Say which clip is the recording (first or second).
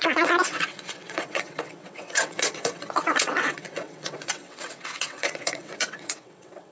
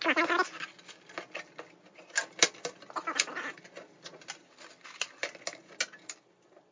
second